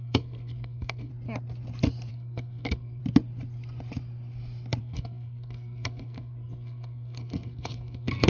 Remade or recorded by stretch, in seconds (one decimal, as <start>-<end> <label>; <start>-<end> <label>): 0.0-1.1 remade; 1.1-2.1 recorded; 2.1-3.0 remade; 3.0-4.8 recorded; 4.8-8.3 remade